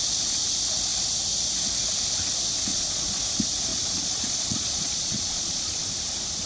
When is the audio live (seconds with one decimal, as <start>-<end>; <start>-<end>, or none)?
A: 0.0-2.7; 3.2-3.7; 5.8-6.5